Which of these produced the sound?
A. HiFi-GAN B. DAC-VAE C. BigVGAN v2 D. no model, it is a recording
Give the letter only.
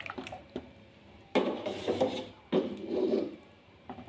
C